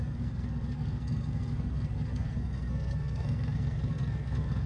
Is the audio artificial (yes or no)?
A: yes